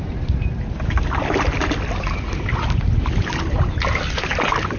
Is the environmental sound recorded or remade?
recorded